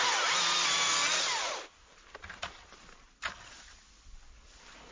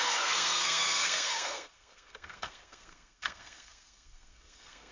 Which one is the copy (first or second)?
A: second